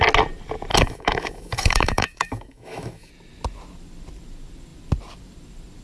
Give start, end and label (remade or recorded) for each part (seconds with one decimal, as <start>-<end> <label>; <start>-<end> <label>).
0.0-0.7 recorded; 0.7-3.1 remade; 3.1-5.8 recorded